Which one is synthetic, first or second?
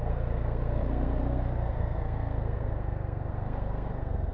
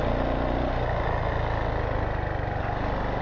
first